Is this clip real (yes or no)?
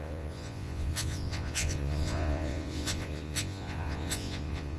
no